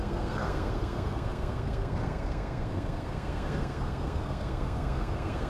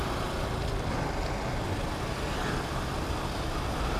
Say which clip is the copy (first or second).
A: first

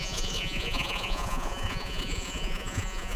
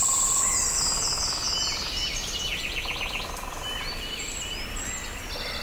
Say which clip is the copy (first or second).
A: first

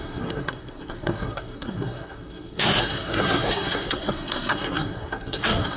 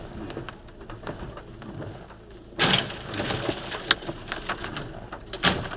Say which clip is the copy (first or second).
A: first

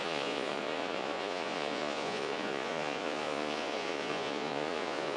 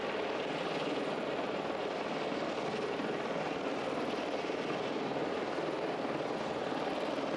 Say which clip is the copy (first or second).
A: first